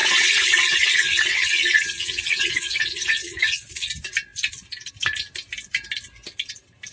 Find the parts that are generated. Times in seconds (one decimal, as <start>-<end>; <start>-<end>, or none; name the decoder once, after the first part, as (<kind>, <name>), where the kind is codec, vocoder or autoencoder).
0.0-3.9 (vocoder, Vocos)